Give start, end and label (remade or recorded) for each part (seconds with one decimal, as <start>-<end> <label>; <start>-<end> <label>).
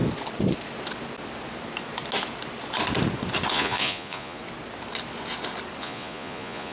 0.0-3.5 recorded; 3.5-4.4 remade; 4.4-5.8 recorded; 5.8-6.7 remade